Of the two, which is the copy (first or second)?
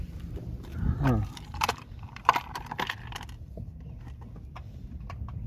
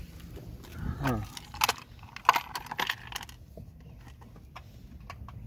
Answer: first